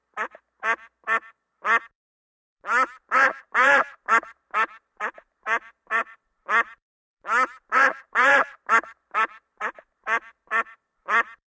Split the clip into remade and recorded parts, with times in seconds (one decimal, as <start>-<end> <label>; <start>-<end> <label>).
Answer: 0.0-1.8 recorded; 1.8-11.5 remade